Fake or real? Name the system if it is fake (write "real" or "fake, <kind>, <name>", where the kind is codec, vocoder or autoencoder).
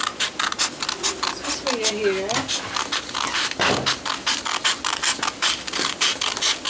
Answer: real